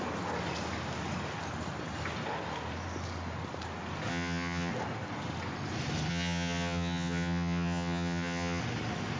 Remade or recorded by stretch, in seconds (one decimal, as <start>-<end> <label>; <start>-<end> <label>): 0.0-4.1 recorded; 4.1-4.7 remade; 4.7-6.1 recorded; 6.1-8.6 remade; 8.6-9.2 recorded